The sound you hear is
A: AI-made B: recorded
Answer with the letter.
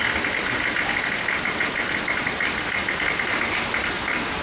B